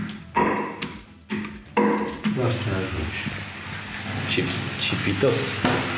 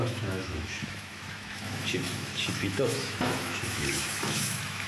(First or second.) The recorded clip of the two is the first